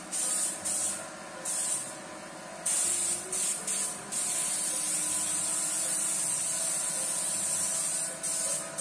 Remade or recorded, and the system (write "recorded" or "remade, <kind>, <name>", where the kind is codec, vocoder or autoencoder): recorded